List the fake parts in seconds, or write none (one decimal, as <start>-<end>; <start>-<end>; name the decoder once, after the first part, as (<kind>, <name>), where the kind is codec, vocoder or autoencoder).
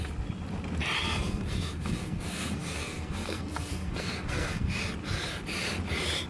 1.0-4.8 (codec, SNAC)